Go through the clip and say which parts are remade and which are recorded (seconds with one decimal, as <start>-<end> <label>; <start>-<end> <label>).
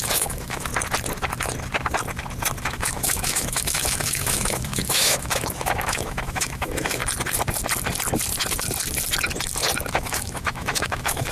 0.0-0.7 remade; 0.7-2.6 recorded; 2.6-7.0 remade; 7.0-9.9 recorded; 9.9-11.3 remade